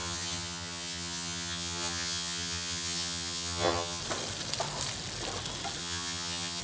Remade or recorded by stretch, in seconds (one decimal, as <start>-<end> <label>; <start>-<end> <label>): 0.0-4.0 remade; 4.0-5.8 recorded; 5.8-6.6 remade